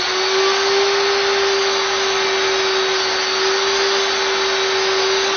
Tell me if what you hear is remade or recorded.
recorded